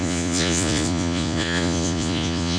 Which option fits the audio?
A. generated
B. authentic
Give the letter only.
A